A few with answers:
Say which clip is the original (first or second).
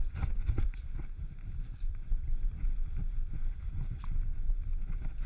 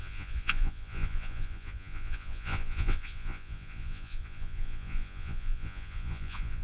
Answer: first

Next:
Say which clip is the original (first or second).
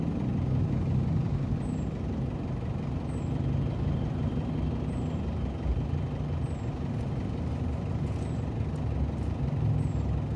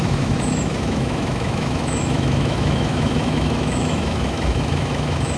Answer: first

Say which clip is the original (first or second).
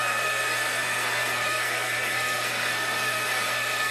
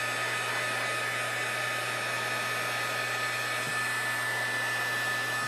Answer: second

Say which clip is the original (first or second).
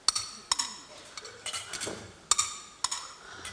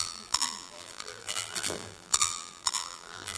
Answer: first